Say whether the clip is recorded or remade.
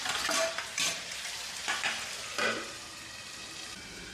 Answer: recorded